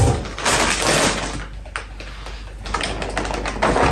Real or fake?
real